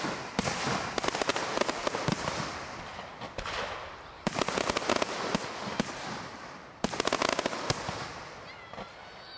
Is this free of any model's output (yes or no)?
yes